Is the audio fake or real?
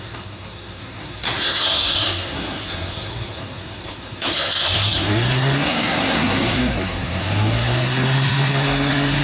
fake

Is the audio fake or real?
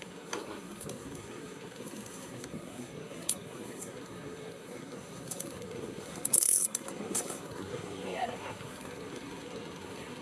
fake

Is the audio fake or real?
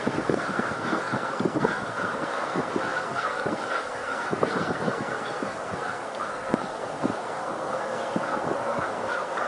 fake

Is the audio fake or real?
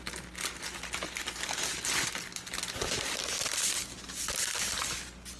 real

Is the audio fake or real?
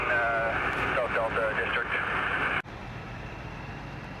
real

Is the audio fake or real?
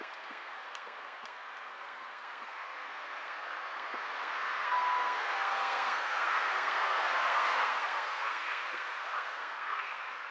fake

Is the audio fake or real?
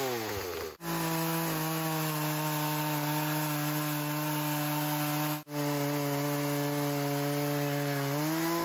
real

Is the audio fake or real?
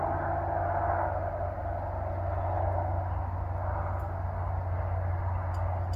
real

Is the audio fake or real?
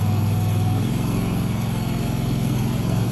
fake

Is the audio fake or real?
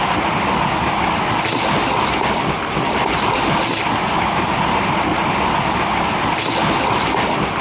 real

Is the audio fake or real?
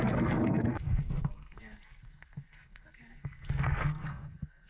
fake